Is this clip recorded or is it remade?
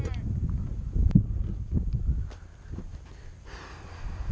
recorded